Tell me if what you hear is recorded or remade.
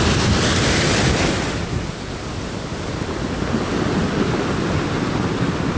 recorded